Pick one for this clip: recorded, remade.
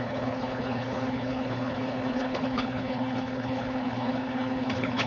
remade